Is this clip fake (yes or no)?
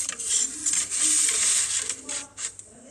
yes